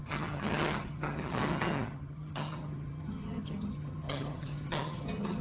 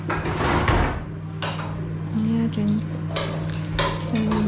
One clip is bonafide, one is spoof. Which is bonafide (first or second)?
second